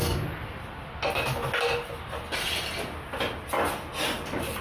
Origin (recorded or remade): recorded